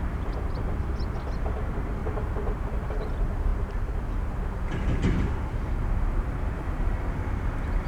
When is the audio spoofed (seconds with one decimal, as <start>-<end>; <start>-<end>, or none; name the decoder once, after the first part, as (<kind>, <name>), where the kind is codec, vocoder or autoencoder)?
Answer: 2.0-2.9 (vocoder, BigVGAN v2)